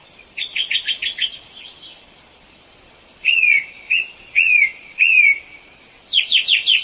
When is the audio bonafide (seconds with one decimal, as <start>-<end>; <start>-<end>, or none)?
none